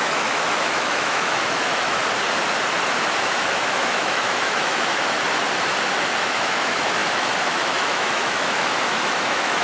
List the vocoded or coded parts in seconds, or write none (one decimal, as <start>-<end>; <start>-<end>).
0.0-2.0; 3.2-4.9; 6.2-9.6